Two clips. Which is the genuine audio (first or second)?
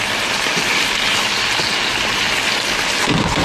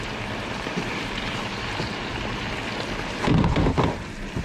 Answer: first